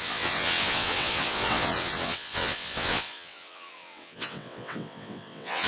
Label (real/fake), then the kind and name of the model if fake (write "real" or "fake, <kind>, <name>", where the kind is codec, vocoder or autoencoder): fake, vocoder, WaveNeXt